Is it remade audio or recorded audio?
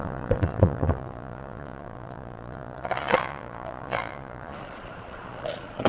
remade